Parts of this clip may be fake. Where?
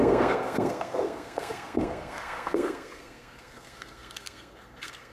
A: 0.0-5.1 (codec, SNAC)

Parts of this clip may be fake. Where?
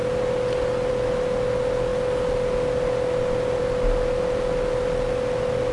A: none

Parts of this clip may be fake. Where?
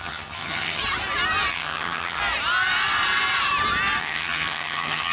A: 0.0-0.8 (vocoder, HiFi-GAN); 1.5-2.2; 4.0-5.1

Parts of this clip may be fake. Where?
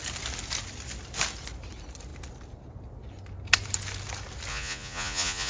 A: 4.5-5.5 (vocoder, Vocos)